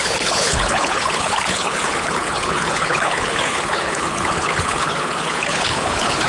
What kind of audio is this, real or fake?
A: fake